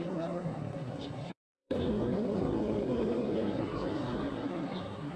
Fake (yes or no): yes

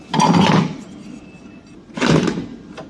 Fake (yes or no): no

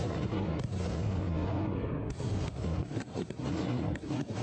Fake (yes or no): yes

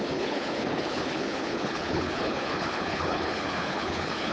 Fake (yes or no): yes